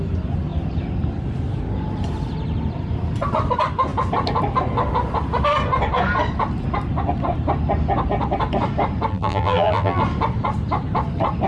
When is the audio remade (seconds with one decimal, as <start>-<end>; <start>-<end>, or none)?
9.1-10.0